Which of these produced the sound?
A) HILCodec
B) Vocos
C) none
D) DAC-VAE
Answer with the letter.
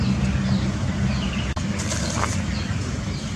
C